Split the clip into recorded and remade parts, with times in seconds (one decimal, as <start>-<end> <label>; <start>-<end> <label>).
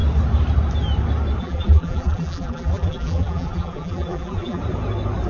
0.0-1.4 recorded; 1.4-4.6 remade; 4.6-5.3 recorded